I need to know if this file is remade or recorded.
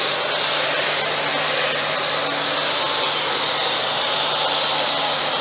recorded